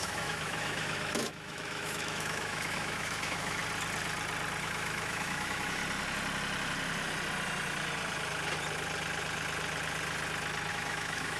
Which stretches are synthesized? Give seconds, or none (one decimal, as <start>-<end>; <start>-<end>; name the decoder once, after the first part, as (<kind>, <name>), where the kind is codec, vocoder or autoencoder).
0.0-3.6 (autoencoder, DAC-VAE); 4.6-5.8; 10.7-11.4